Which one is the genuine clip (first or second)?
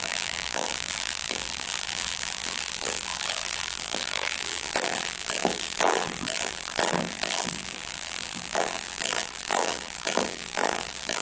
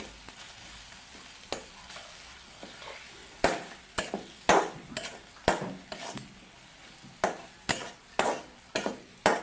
second